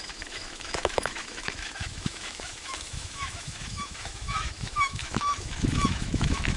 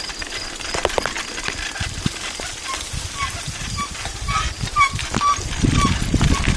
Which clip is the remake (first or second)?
first